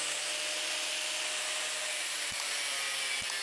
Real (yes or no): yes